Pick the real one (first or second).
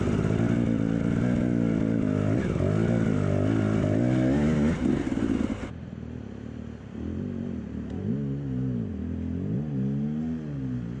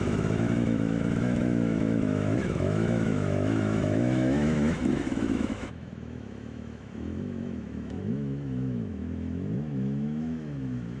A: first